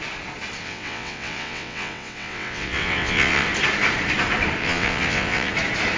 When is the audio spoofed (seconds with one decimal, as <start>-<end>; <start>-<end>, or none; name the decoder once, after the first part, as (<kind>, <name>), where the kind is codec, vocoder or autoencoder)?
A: 0.6-3.5 (vocoder, WaveNeXt); 4.6-5.5